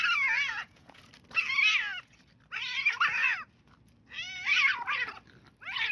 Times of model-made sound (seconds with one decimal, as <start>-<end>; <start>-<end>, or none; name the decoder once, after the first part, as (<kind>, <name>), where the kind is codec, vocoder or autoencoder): 0.5-1.0 (vocoder, Vocos)